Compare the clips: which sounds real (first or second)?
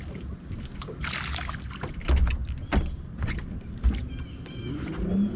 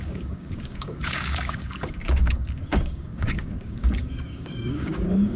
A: first